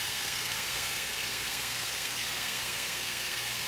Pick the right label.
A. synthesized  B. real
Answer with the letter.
A